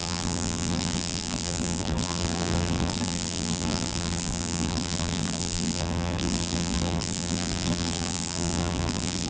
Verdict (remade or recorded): remade